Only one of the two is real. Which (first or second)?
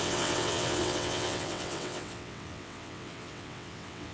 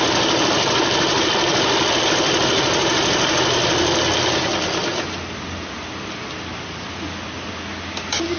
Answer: second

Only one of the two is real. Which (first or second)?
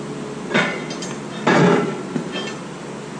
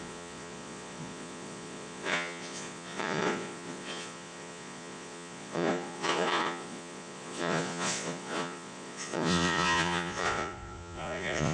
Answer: first